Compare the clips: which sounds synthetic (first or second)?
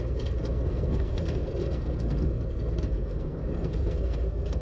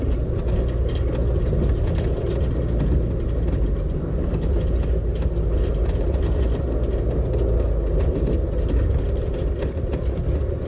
first